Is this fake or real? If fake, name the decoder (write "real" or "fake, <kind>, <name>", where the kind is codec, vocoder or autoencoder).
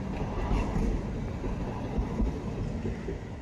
real